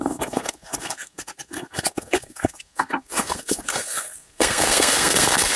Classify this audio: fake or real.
fake